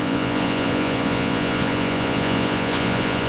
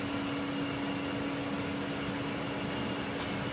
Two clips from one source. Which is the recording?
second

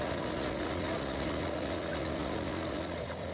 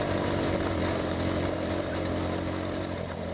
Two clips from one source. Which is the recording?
second